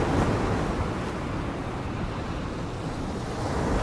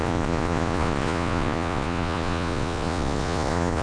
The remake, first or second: second